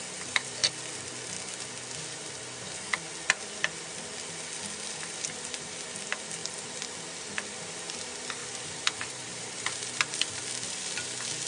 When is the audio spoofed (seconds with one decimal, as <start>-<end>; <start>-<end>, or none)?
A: 0.0-0.6; 4.8-6.4; 7.0-8.4; 9.0-11.5